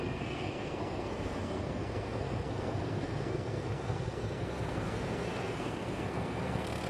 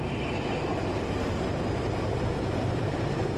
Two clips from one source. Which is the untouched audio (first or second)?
second